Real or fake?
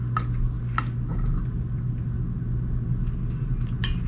real